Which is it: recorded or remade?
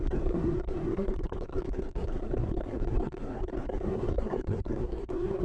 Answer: remade